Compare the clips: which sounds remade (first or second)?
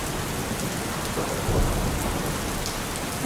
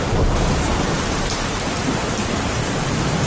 second